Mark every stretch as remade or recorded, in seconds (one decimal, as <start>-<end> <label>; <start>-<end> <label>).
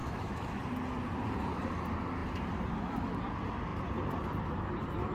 0.0-0.6 remade; 0.6-5.1 recorded